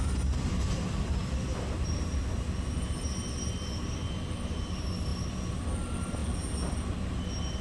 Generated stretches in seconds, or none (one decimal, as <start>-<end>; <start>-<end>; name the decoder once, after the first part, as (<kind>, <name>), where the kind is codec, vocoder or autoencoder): none